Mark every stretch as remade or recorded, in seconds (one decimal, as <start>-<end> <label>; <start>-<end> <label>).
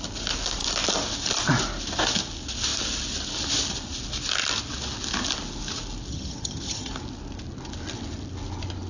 0.0-6.1 recorded; 6.1-6.9 remade; 6.9-8.9 recorded